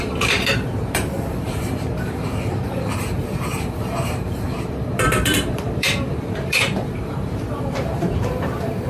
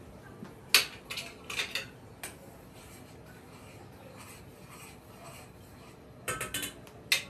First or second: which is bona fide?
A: second